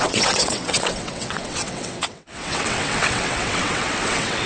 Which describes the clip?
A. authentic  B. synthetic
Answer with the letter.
B